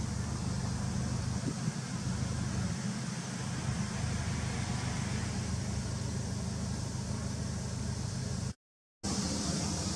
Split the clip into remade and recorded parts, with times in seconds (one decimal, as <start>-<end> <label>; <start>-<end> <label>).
0.0-10.0 recorded